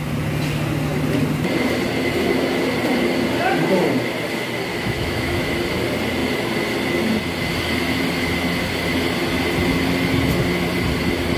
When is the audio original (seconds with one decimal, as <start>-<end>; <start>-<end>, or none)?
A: 0.0-4.7; 5.5-11.4